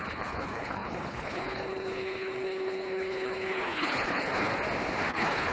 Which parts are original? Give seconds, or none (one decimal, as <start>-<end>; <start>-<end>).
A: 4.5-5.1